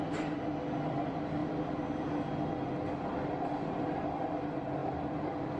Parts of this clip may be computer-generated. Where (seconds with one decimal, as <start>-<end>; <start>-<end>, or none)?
none